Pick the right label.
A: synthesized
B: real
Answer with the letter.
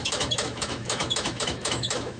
A